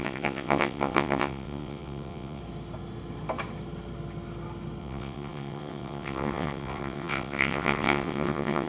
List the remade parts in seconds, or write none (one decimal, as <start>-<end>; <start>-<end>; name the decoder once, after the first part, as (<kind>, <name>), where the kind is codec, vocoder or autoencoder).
0.0-2.4 (vocoder, WaveNeXt); 4.8-8.7